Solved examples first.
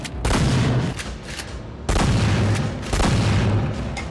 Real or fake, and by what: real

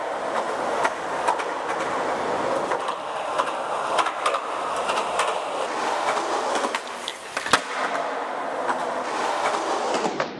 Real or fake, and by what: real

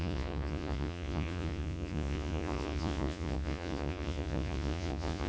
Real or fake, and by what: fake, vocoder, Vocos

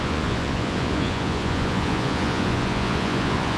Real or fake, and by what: fake, vocoder, Vocos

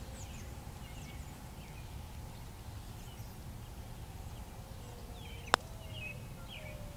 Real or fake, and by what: real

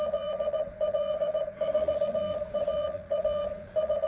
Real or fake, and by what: fake, vocoder, Vocos